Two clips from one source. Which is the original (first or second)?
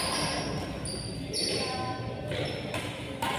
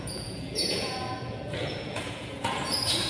first